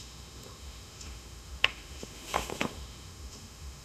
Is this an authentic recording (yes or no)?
no